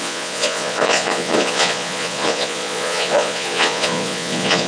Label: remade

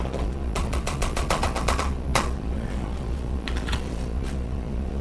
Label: remade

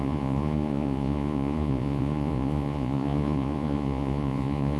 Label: remade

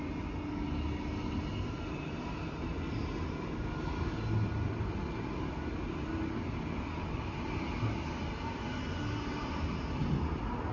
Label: recorded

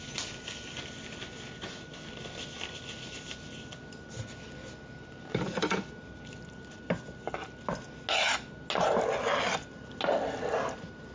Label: recorded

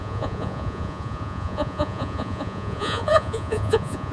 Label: remade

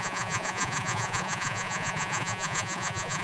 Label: remade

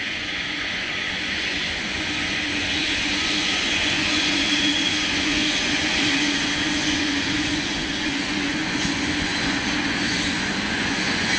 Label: remade